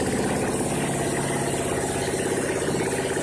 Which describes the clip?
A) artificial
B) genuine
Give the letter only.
B